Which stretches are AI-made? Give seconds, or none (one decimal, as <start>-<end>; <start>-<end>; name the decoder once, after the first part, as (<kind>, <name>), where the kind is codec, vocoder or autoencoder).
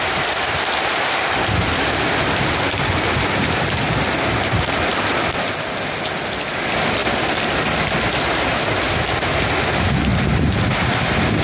0.0-7.0 (vocoder, BigVGAN v2); 9.4-11.4